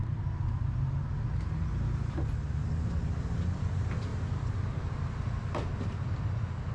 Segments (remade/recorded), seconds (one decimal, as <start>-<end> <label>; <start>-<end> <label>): 0.0-6.7 recorded